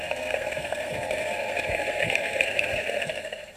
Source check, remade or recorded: remade